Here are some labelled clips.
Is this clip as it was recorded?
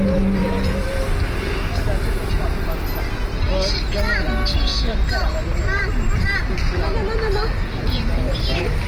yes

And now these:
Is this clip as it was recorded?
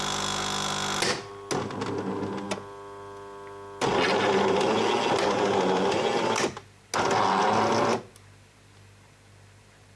yes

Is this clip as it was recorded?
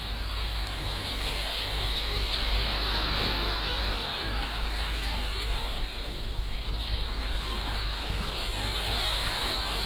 no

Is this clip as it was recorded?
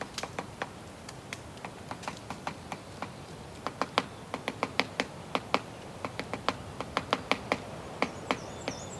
yes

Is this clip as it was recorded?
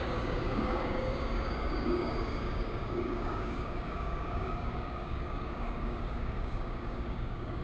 no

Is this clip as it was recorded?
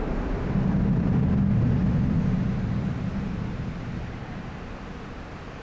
yes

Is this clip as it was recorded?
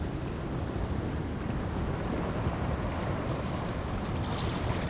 yes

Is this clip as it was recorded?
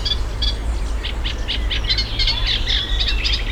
yes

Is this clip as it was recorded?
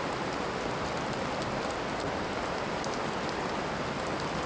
yes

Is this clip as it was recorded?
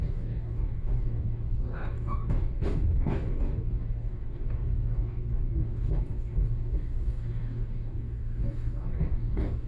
no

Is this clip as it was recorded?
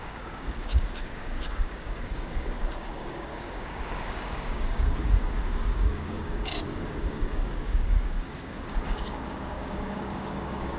no